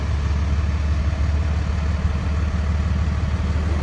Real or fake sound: real